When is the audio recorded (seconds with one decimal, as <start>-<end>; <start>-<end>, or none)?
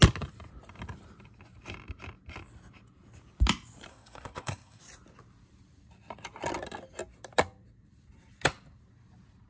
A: 0.0-3.9; 4.8-9.5